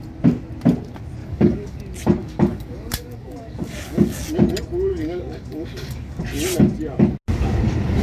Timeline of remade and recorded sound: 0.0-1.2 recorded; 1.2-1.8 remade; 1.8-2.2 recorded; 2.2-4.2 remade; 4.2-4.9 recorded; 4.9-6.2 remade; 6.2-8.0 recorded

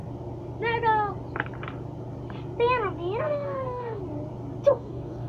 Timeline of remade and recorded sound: 0.0-3.2 recorded; 3.2-4.0 remade; 4.0-4.7 recorded; 4.7-5.3 remade

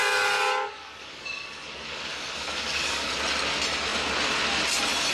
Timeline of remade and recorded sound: 0.0-3.1 remade; 3.1-5.1 recorded